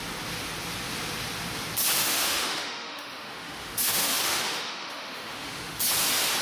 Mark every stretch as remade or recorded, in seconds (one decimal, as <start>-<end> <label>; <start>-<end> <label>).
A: 0.0-2.0 recorded; 2.0-5.8 remade; 5.8-6.4 recorded